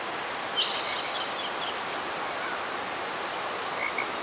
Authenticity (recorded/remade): recorded